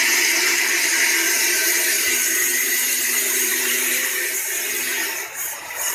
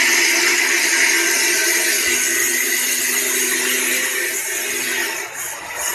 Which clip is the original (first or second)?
second